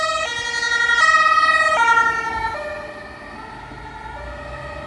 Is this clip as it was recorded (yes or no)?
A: yes